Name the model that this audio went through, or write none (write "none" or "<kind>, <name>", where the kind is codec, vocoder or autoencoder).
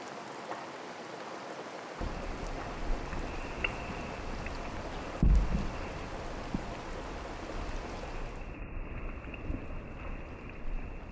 none